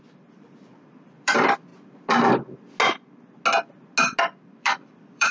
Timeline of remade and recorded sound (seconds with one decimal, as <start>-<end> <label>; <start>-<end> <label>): 0.0-1.7 remade; 1.7-4.2 recorded; 4.2-5.3 remade